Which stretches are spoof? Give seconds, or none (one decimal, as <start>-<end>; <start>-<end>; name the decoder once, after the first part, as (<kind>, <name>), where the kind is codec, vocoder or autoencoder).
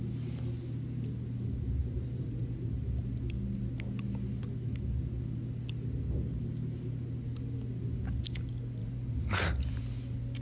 1.8-2.3 (vocoder, BigVGAN v2); 8.8-9.8